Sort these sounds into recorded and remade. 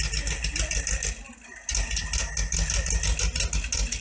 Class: recorded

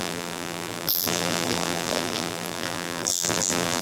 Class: remade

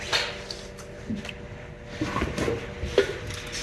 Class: recorded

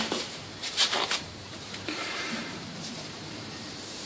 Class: remade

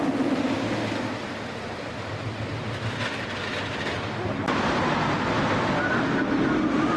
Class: recorded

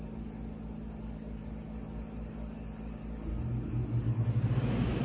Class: recorded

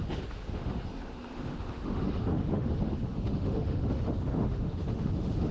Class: remade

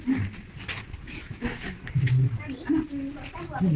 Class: recorded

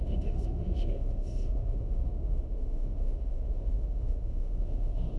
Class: remade